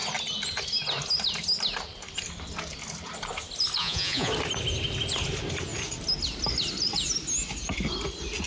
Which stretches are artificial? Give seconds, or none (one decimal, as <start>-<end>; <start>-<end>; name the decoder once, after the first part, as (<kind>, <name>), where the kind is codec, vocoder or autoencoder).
3.8-4.3 (vocoder, Vocos)